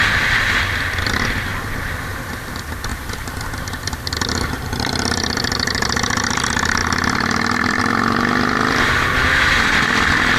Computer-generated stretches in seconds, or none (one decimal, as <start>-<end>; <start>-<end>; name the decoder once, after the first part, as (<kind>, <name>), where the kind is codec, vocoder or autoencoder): 0.0-2.9 (vocoder, BigVGAN v2); 3.5-10.4